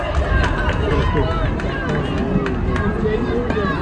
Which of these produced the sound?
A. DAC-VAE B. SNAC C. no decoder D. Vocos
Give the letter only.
C